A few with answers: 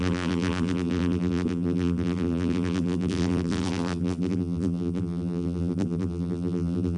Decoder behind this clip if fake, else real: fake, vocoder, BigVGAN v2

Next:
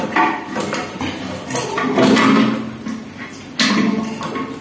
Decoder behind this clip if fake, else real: real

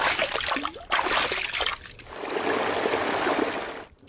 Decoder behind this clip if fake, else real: real